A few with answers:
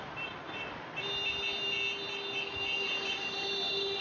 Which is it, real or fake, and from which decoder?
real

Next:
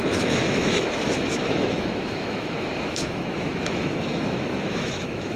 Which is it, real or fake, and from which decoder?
fake, autoencoder, DAC-VAE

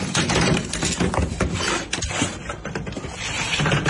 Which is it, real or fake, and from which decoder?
real